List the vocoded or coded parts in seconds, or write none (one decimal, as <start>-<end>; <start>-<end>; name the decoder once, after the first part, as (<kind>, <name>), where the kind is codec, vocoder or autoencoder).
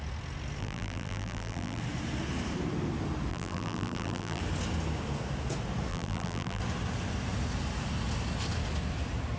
0.6-1.8 (vocoder, BigVGAN v2); 3.3-4.4; 5.9-6.6